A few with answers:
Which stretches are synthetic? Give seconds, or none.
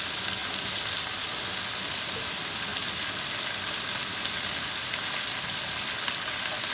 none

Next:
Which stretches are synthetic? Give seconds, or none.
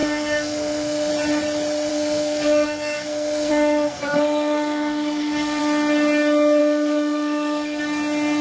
0.0-1.1; 1.9-5.6; 6.6-7.8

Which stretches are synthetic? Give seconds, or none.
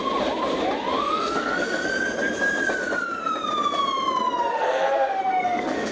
1.0-1.9; 4.5-5.9